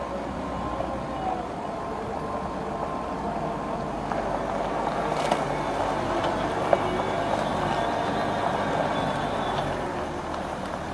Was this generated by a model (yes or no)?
no